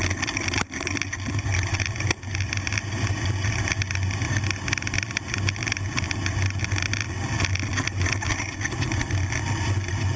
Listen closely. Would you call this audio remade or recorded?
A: recorded